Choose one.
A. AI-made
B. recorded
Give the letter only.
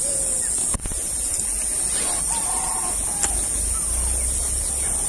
B